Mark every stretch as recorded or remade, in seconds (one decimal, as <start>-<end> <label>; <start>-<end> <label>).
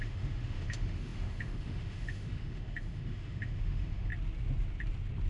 0.0-4.1 remade; 4.1-5.3 recorded